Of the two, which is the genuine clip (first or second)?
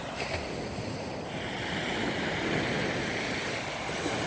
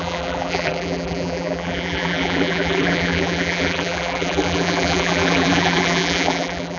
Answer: first